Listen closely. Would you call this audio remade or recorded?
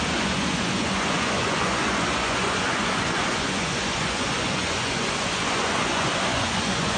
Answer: remade